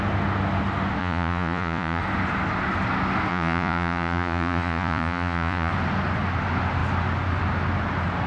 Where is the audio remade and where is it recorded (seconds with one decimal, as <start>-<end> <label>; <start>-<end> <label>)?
0.0-1.0 recorded; 1.0-2.0 remade; 2.0-3.3 recorded; 3.3-5.7 remade; 5.7-8.3 recorded